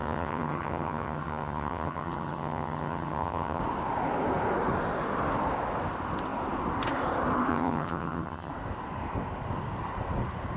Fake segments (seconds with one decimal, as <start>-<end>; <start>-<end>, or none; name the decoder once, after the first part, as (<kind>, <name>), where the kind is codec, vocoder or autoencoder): 0.0-3.6 (vocoder, HiFi-GAN); 7.5-8.5